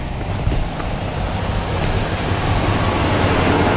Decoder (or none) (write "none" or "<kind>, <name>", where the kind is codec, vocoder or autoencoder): none